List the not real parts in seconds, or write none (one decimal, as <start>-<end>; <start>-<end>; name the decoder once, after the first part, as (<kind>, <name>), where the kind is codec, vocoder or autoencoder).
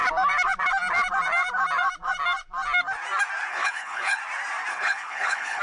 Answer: 3.5-4.2 (codec, HILCodec); 4.7-5.6